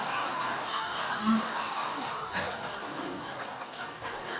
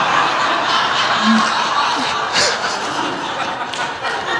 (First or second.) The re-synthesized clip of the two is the first